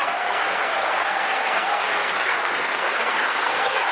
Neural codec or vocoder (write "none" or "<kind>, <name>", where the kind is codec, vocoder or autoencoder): codec, SNAC